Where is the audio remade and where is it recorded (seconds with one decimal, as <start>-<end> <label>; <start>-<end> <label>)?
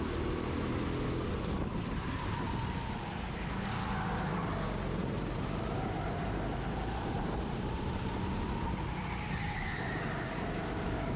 0.0-5.0 recorded; 5.0-7.7 remade; 7.7-11.2 recorded